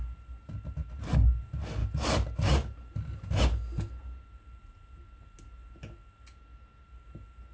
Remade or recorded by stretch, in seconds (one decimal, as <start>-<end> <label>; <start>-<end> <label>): 0.0-1.8 recorded; 1.8-3.4 remade; 3.4-7.5 recorded